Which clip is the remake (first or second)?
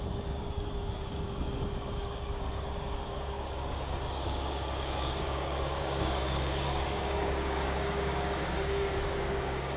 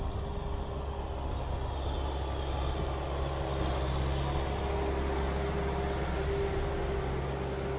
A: first